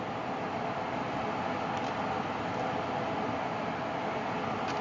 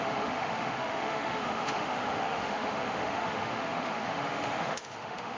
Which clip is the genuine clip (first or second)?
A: first